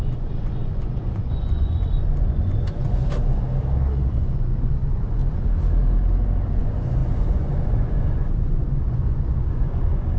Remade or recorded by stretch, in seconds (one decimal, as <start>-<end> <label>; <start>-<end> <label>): 0.0-3.0 remade; 3.0-4.1 recorded; 4.1-5.2 remade; 5.2-6.6 recorded; 6.6-10.2 remade